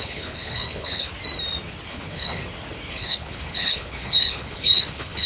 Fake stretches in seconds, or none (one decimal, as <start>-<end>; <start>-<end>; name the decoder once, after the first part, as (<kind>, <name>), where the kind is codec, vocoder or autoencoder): 0.0-1.1 (codec, HILCodec); 1.9-2.4; 2.9-5.3